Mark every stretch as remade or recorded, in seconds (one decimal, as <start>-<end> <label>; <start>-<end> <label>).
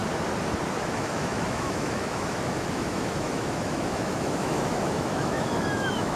0.0-0.8 recorded; 0.8-6.2 remade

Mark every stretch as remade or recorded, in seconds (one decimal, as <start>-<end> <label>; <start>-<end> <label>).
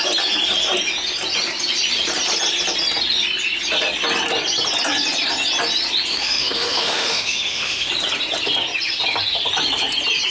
0.0-6.1 recorded; 6.1-7.9 remade; 7.9-10.3 recorded